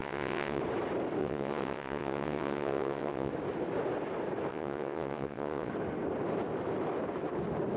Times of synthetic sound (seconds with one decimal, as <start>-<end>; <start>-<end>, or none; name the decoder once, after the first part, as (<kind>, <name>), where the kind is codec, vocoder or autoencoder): 0.0-0.6 (vocoder, WaveNeXt); 1.2-3.3; 4.5-5.7